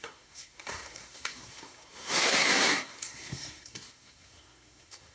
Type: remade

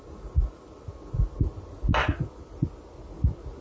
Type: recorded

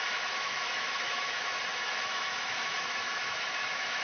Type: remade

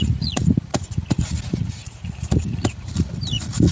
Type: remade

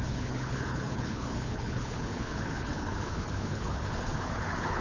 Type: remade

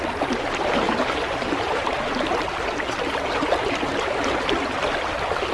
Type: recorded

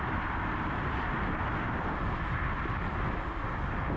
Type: recorded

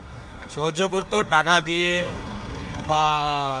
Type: remade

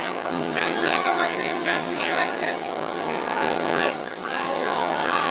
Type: remade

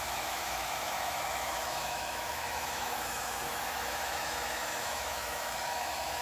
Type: remade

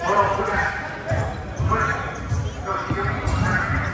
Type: recorded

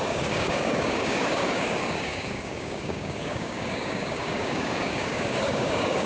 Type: remade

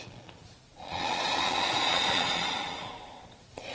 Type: remade